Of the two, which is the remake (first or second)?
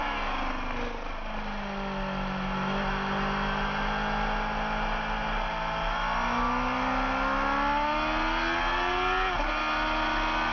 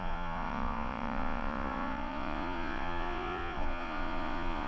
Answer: second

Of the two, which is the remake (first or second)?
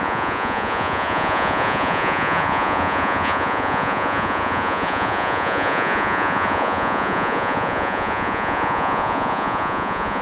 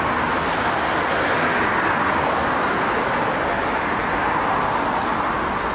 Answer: first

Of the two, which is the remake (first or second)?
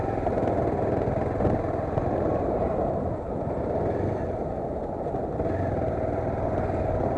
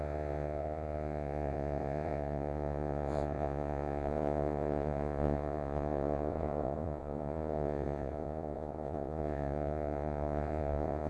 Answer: second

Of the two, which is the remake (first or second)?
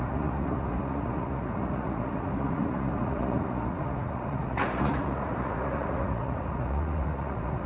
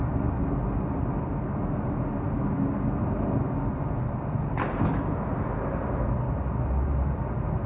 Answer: first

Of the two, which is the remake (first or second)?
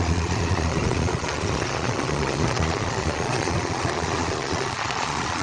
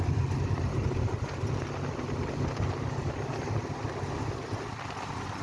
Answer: first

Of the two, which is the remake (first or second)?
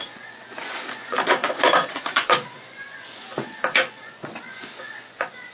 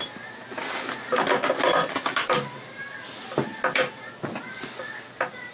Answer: first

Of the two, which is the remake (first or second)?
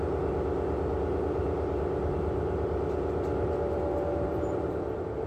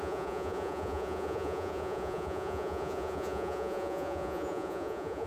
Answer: second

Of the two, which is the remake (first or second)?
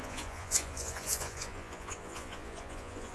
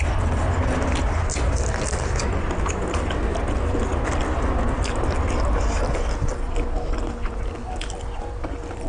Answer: first